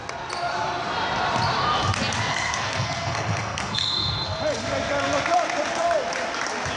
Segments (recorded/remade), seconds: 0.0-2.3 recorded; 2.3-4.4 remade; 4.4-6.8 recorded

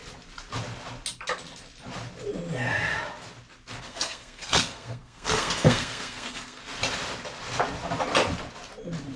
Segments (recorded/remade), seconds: 0.0-3.8 recorded; 3.8-6.6 remade; 6.6-9.2 recorded

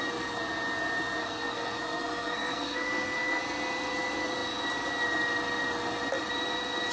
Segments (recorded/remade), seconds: 0.0-1.2 recorded; 1.2-3.4 remade; 3.4-6.9 recorded

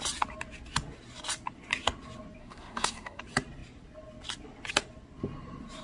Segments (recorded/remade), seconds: 0.0-2.4 recorded; 2.4-3.2 remade; 3.2-5.8 recorded

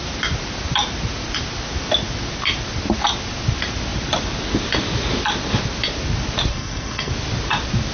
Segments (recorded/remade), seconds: 0.0-6.5 recorded; 6.5-7.1 remade; 7.1-7.9 recorded